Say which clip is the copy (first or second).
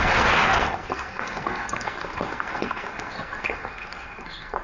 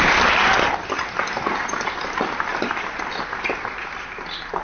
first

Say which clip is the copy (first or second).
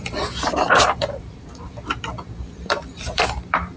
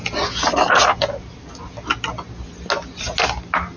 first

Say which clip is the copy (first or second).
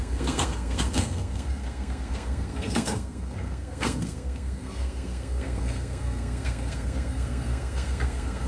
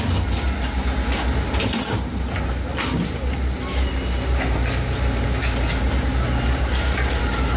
first